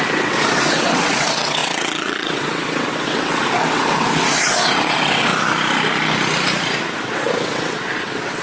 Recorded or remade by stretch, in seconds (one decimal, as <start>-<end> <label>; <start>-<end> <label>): 0.0-5.3 remade; 5.3-7.1 recorded; 7.1-8.4 remade